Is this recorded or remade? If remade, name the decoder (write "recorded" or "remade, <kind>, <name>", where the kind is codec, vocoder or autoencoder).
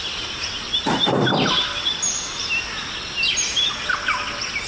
recorded